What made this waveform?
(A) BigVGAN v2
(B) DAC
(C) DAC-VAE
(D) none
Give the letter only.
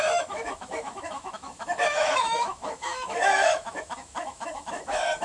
C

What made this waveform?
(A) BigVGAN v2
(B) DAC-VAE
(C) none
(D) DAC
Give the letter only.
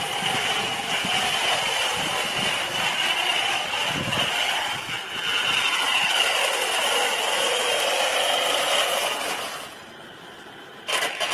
C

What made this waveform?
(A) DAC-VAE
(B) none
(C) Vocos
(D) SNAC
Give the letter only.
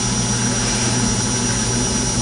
B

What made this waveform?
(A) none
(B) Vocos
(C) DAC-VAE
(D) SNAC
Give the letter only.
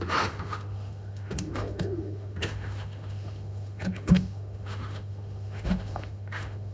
C